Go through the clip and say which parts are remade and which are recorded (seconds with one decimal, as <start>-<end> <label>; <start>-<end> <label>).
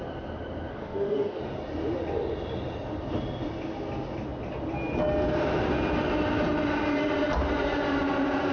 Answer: 0.0-0.7 recorded; 0.7-1.4 remade; 1.4-8.5 recorded